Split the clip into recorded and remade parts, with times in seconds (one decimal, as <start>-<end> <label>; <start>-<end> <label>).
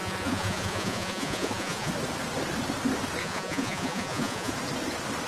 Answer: 0.0-1.9 remade; 1.9-3.2 recorded; 3.2-4.5 remade; 4.5-5.3 recorded